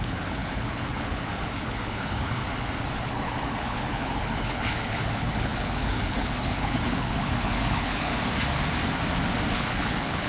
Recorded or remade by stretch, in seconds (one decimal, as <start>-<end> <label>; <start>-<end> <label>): 0.0-2.4 remade; 2.4-3.0 recorded; 3.0-8.1 remade; 8.1-9.5 recorded; 9.5-10.3 remade